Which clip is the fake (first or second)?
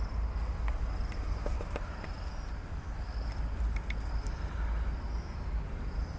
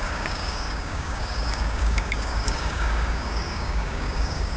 second